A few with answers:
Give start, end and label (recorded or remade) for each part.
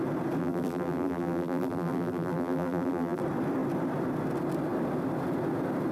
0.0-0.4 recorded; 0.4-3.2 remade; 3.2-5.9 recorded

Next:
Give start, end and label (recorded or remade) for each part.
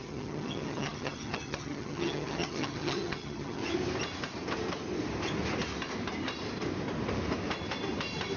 0.0-3.6 remade; 3.6-8.4 recorded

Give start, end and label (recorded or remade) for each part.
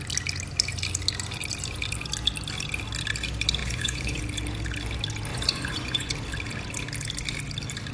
0.0-3.6 recorded; 3.6-4.2 remade; 4.2-5.3 recorded; 5.3-6.1 remade; 6.1-7.9 recorded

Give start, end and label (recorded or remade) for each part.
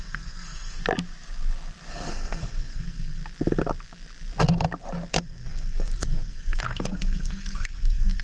0.0-0.8 remade; 0.8-1.9 recorded; 1.9-3.2 remade; 3.2-5.1 recorded; 5.1-8.2 remade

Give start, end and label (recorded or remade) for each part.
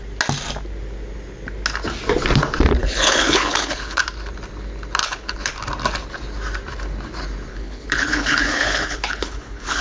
0.0-2.8 recorded; 2.8-4.0 remade; 4.0-5.0 recorded; 5.0-5.5 remade; 5.5-7.5 recorded; 7.5-9.8 remade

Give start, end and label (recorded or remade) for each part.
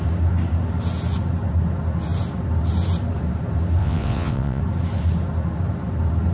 0.0-3.8 recorded; 3.8-4.6 remade; 4.6-6.3 recorded